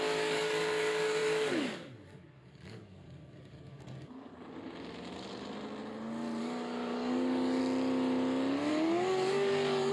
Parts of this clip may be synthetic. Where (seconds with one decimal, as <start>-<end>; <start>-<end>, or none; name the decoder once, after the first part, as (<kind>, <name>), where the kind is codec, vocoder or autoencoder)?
0.0-4.3 (codec, DAC); 6.4-7.6; 8.7-9.9